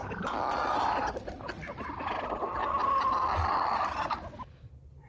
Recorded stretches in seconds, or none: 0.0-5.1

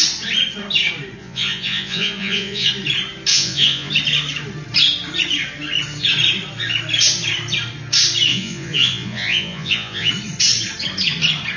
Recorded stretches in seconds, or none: 0.0-1.2; 2.7-3.3; 3.9-8.3; 10.1-11.6

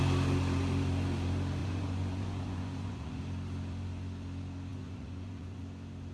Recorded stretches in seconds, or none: 0.0-1.6; 3.2-4.7; 5.6-6.1